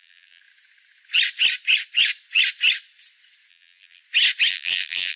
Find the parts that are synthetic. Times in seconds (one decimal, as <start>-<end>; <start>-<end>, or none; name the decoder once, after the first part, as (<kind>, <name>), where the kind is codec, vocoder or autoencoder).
0.0-0.4 (vocoder, BigVGAN v2); 3.5-4.0; 4.5-5.2